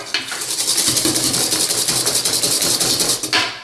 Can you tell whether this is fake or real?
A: real